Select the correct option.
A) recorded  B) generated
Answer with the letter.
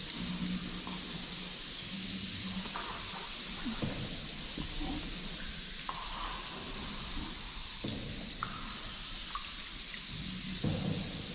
A